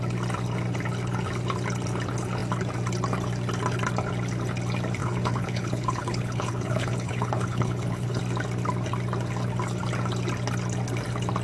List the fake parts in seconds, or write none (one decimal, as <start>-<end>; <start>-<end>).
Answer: 5.0-8.2